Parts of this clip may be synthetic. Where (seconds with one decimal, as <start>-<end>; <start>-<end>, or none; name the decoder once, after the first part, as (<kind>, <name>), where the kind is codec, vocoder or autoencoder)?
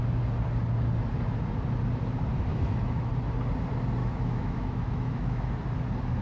2.5-3.1 (autoencoder, DAC-VAE); 4.0-5.4